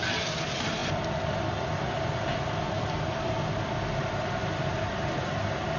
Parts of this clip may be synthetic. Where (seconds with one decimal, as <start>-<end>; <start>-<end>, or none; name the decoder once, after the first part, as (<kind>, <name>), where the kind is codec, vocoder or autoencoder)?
none